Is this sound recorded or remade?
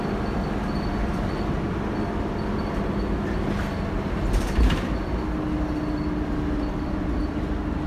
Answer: recorded